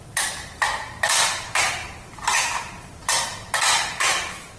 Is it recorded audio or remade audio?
recorded